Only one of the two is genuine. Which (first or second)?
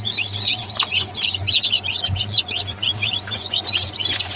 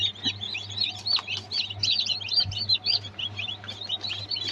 second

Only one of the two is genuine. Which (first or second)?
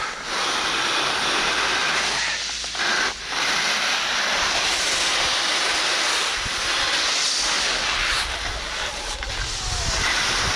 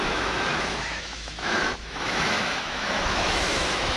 first